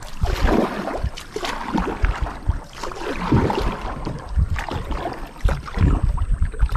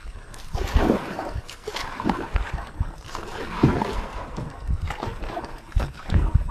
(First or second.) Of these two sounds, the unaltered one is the first